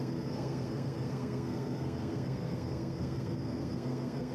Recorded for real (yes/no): no